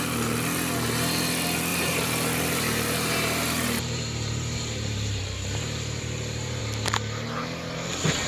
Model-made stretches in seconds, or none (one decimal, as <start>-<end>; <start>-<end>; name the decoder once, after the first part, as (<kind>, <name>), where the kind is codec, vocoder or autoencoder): 1.7-6.6 (vocoder, BigVGAN v2)